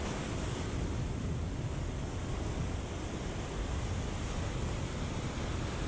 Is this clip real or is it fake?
real